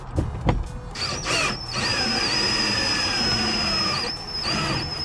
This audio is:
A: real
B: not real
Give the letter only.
A